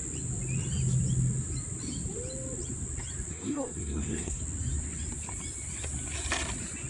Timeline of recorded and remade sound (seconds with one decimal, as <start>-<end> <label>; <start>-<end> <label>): 0.0-3.3 recorded; 3.3-4.4 remade; 4.4-6.9 recorded